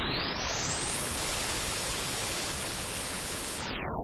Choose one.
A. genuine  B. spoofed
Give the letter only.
B